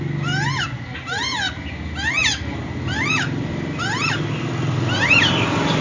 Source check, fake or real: real